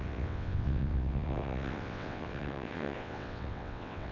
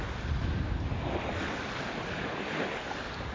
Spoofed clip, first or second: first